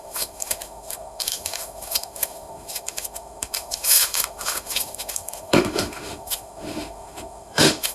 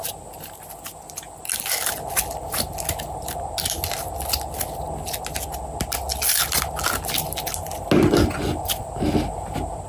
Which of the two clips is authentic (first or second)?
second